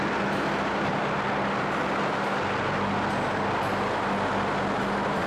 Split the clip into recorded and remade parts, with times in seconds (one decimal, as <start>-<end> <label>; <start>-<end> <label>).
0.0-5.3 recorded